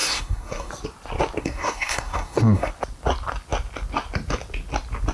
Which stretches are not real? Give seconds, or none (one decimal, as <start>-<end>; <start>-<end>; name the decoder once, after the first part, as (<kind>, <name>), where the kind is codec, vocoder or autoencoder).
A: 0.0-0.7 (codec, SNAC); 1.4-2.7